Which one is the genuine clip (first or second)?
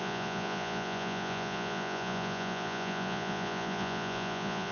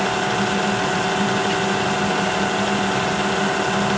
second